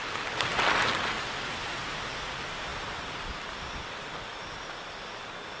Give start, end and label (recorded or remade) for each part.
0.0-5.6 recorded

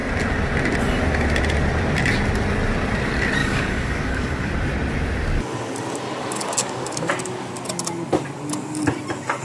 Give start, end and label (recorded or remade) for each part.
0.0-3.4 recorded; 3.4-4.5 remade; 4.5-6.2 recorded; 6.2-7.1 remade; 7.1-9.4 recorded